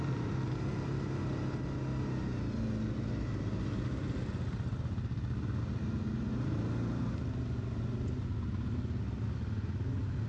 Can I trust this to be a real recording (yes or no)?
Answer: yes